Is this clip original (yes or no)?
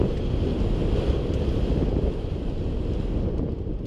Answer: yes